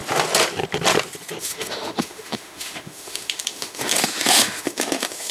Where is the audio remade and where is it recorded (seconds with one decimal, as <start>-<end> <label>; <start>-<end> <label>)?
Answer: 0.0-1.4 recorded; 1.4-5.3 remade